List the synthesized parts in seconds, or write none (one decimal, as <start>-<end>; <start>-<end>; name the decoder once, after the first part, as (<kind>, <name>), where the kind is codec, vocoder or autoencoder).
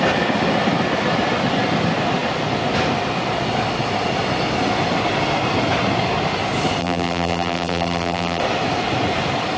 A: 6.8-8.4 (vocoder, BigVGAN v2)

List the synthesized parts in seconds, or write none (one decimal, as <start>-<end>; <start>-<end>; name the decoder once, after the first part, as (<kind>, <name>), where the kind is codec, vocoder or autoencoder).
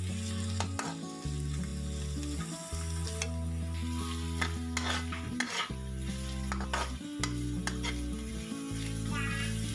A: none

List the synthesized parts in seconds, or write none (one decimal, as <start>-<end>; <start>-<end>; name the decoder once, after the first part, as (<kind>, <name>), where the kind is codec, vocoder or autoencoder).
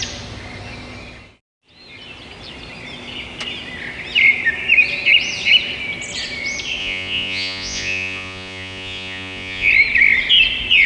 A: 6.8-9.7 (vocoder, Vocos)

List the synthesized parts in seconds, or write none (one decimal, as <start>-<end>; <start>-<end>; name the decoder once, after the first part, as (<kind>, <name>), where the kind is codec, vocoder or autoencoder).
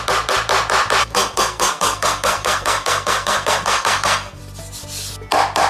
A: 1.0-4.4 (codec, SNAC)